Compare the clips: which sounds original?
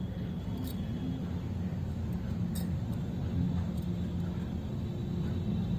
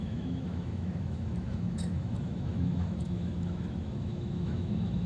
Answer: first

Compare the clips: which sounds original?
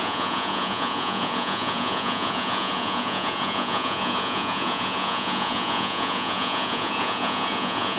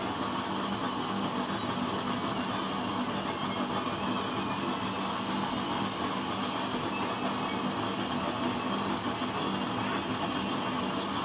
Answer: second